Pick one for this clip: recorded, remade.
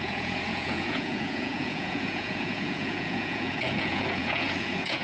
remade